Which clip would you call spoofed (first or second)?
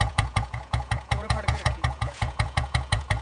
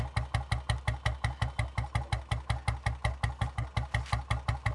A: first